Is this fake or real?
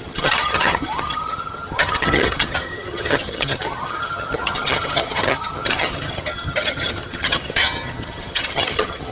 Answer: fake